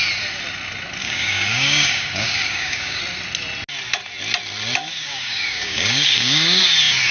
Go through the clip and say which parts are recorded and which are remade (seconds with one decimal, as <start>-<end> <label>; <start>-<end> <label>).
0.0-1.0 recorded; 1.0-3.0 remade; 3.0-5.0 recorded; 5.0-6.6 remade; 6.6-7.1 recorded